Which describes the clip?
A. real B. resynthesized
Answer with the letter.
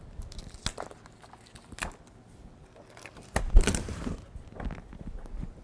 A